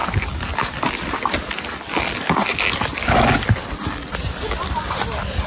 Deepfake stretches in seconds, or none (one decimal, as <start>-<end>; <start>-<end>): none